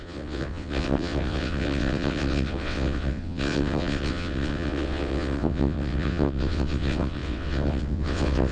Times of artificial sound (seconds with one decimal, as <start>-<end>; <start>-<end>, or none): 0.0-8.5